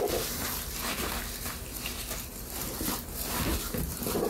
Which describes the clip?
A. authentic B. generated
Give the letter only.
B